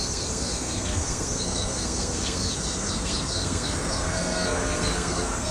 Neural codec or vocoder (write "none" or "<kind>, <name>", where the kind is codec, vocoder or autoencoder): codec, SNAC